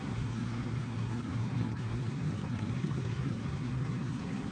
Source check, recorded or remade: remade